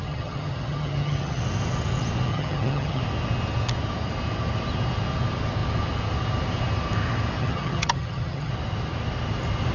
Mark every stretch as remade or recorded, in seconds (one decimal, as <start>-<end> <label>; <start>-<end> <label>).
0.0-1.4 remade; 1.4-2.3 recorded; 2.3-3.0 remade; 3.0-7.4 recorded; 7.4-8.5 remade; 8.5-9.7 recorded

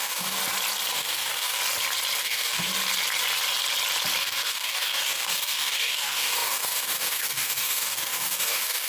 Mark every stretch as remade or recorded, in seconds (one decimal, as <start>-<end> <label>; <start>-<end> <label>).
0.0-0.4 remade; 0.4-0.9 recorded; 0.9-1.6 remade; 1.6-2.2 recorded; 2.2-2.7 remade; 2.7-4.2 recorded; 4.2-8.9 remade

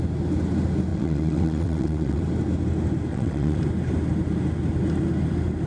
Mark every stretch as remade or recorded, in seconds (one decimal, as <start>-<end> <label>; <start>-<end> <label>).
0.0-0.9 recorded; 0.9-2.2 remade; 2.2-3.1 recorded; 3.1-3.6 remade; 3.6-5.7 recorded

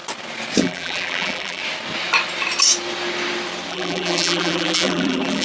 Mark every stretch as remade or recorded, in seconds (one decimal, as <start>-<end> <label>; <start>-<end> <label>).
0.0-0.6 recorded; 0.6-1.6 remade; 1.6-3.7 recorded; 3.7-5.4 remade

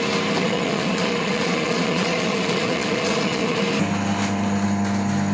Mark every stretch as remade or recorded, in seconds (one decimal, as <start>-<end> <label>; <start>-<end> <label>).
0.0-0.4 recorded; 0.4-3.6 remade; 3.6-5.3 recorded

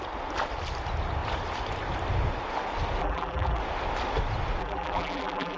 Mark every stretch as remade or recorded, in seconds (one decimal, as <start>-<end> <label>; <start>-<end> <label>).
0.0-3.0 recorded; 3.0-3.6 remade; 3.6-4.6 recorded; 4.6-5.6 remade